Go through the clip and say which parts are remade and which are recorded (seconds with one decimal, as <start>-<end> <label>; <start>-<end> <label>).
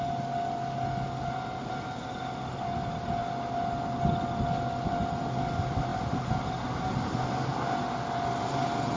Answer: 0.0-9.0 recorded